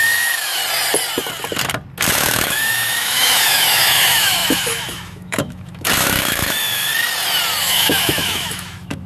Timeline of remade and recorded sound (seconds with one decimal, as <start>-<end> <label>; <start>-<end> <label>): 0.0-0.6 remade; 0.6-2.1 recorded; 2.1-6.9 remade; 6.9-7.6 recorded; 7.6-9.1 remade